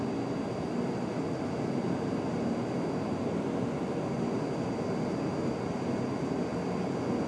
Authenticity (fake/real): real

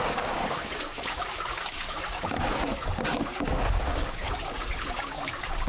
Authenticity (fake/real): fake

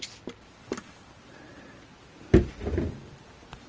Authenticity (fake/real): real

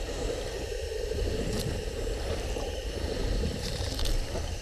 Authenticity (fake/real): fake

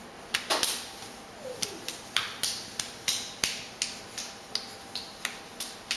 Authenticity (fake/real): real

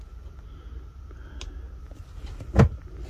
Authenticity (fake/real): real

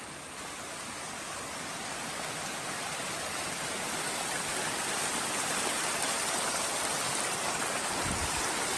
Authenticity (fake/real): real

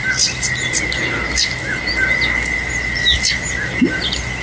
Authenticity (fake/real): real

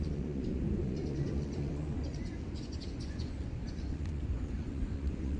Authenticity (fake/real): fake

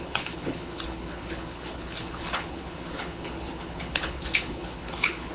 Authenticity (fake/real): fake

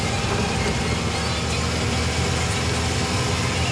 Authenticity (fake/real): real